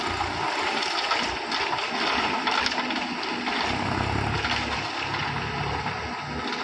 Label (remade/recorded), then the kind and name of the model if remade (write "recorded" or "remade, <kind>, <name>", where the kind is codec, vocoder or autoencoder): recorded